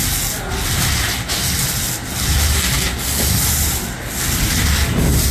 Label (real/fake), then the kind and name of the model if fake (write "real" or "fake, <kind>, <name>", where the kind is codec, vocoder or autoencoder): real